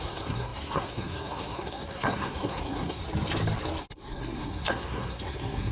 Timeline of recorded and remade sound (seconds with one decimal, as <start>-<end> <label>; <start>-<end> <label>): 0.0-3.0 remade; 3.0-3.8 recorded; 3.8-5.7 remade